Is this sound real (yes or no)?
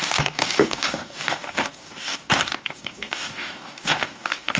no